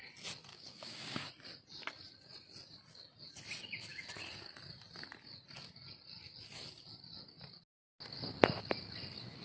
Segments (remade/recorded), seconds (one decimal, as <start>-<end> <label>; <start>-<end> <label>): 0.0-0.5 recorded; 0.5-1.3 remade; 1.3-9.4 recorded